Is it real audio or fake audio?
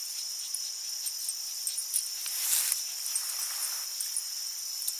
real